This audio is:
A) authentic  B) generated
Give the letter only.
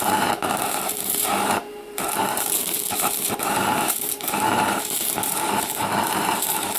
B